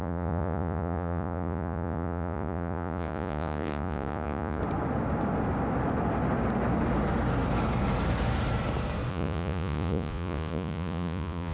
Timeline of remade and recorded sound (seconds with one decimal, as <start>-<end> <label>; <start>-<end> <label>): 0.0-4.6 remade; 4.6-9.1 recorded; 9.1-11.5 remade